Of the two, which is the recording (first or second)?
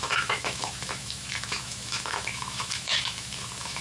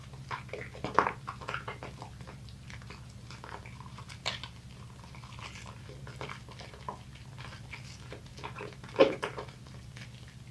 second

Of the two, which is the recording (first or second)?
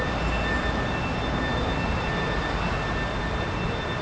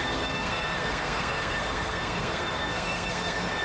first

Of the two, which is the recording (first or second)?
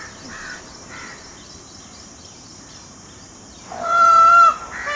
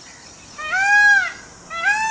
second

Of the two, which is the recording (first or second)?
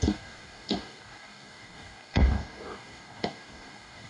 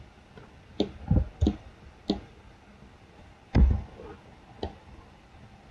second